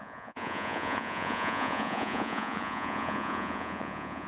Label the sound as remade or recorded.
remade